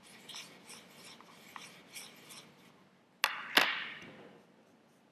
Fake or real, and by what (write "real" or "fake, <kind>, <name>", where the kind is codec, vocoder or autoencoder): real